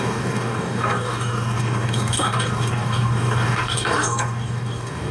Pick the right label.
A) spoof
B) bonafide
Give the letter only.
A